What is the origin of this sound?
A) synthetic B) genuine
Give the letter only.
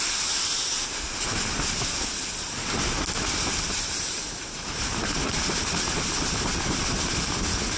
B